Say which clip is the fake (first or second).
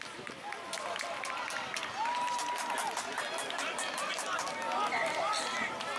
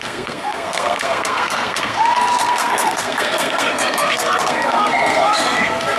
second